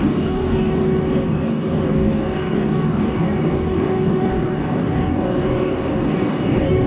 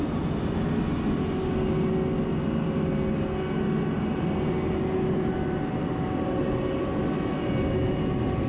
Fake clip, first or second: first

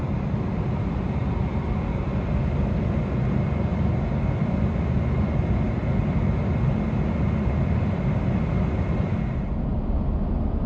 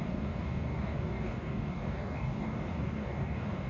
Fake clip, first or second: second